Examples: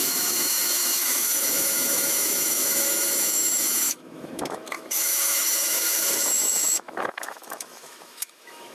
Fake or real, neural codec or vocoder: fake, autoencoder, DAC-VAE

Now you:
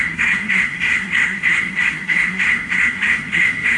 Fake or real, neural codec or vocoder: fake, codec, SNAC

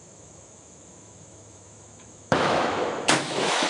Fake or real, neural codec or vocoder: fake, autoencoder, DAC-VAE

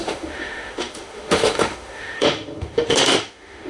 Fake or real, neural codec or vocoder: fake, autoencoder, DAC-VAE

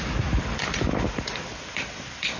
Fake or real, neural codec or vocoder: real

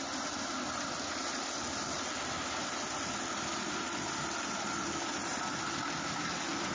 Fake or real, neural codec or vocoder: real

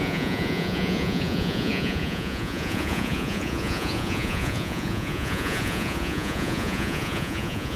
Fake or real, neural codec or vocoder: fake, vocoder, Vocos